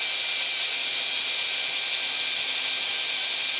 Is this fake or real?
real